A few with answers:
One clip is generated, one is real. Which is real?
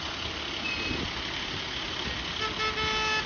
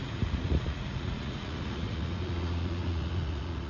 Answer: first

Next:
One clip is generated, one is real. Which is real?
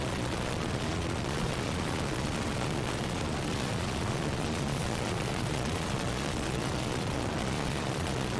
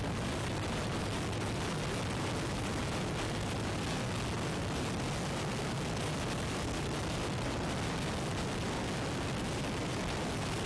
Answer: second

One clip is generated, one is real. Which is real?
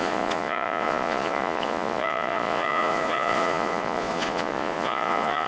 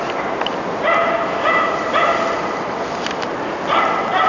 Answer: second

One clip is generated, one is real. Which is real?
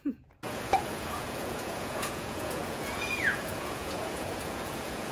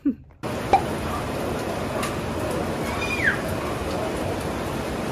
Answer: second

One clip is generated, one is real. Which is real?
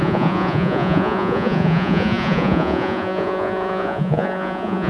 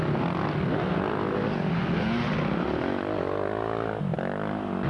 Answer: second